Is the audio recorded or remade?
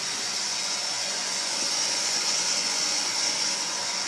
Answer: remade